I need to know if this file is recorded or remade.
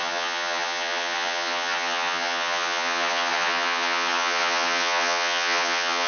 remade